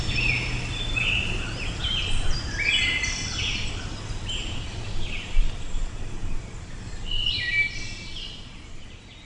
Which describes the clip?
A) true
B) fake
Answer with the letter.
A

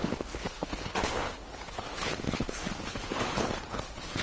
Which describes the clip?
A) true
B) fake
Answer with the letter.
B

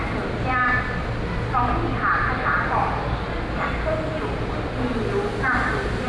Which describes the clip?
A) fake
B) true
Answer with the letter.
B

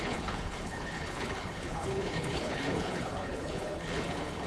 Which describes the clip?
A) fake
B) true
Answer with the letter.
A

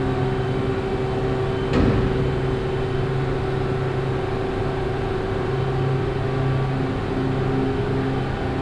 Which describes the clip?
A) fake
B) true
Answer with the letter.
B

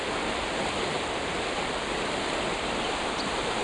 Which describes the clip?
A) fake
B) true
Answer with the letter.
B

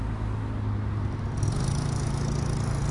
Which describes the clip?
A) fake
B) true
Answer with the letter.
B